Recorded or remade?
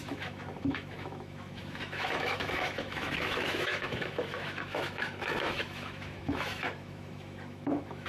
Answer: remade